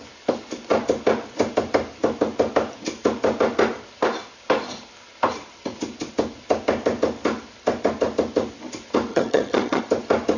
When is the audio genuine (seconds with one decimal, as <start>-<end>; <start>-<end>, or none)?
0.0-9.1; 9.8-10.4

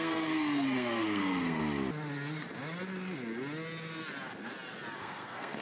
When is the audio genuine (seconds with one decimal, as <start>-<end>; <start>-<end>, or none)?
1.6-5.0

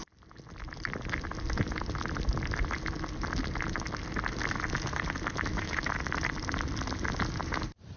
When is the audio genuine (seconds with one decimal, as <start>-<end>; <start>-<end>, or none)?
0.0-5.5; 6.0-8.0

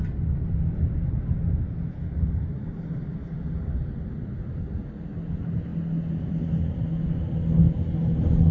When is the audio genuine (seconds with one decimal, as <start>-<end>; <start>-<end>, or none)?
0.0-8.5

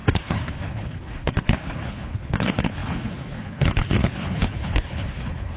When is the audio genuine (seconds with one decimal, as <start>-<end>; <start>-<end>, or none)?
none